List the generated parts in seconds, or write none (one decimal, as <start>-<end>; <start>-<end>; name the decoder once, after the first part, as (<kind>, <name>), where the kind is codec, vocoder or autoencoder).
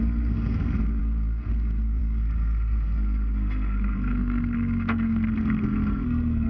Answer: 0.0-6.5 (codec, SNAC)